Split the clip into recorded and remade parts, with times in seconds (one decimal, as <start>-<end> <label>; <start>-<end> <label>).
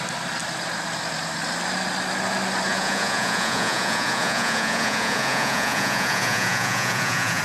0.0-2.7 recorded; 2.7-7.4 remade